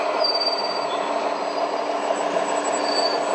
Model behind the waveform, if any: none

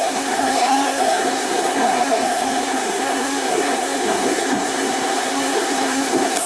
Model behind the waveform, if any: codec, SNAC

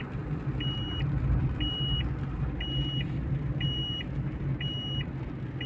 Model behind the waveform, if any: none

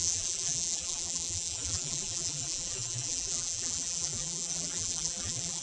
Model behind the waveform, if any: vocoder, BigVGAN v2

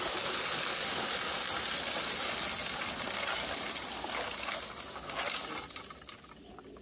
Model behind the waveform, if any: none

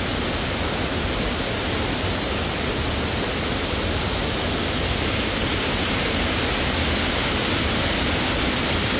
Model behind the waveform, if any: none